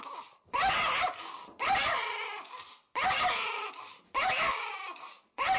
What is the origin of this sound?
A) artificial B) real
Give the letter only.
B